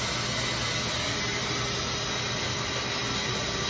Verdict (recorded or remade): recorded